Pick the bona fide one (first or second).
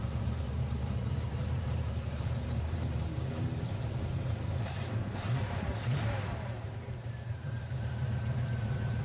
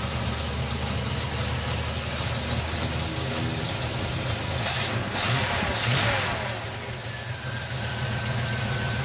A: second